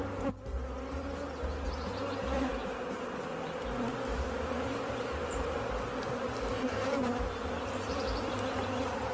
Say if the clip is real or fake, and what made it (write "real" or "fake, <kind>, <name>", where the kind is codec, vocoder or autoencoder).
real